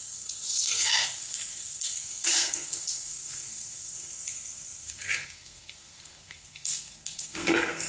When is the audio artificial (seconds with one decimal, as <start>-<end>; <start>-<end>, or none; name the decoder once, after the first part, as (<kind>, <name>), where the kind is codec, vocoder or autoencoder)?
0.0-7.9 (codec, SNAC)

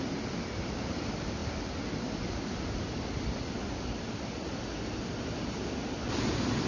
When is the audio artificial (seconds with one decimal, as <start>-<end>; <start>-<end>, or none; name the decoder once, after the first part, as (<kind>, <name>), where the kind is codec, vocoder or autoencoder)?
none

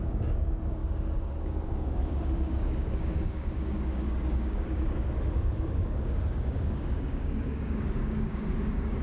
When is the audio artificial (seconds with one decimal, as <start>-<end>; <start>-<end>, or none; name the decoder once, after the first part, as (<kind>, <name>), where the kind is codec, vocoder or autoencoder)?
0.0-0.8 (codec, DAC); 1.4-9.0

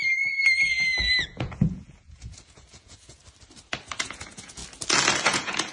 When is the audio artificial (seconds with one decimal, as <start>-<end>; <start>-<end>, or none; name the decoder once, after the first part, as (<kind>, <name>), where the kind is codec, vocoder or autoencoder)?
0.0-0.4 (vocoder, Vocos); 1.2-3.2; 4.0-4.6; 5.2-5.7

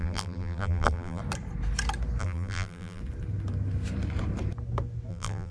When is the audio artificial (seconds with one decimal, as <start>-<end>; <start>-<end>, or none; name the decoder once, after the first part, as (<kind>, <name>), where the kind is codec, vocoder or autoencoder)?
0.0-1.2 (vocoder, BigVGAN v2); 2.2-3.0; 5.1-5.5

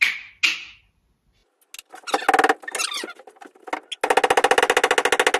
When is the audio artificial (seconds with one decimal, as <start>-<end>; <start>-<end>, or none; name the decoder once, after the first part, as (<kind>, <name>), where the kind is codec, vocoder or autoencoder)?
none

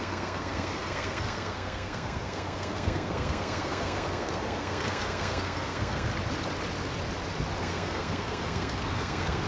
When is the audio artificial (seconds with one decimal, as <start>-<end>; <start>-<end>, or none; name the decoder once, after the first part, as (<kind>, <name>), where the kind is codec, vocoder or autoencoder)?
0.0-6.1 (codec, SNAC); 7.6-9.5